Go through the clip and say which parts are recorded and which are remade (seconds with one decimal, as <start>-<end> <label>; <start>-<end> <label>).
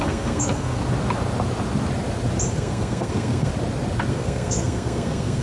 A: 0.0-0.8 remade; 0.8-2.5 recorded; 2.5-3.5 remade; 3.5-4.1 recorded; 4.1-5.4 remade